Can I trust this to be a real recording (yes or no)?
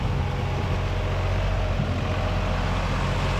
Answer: yes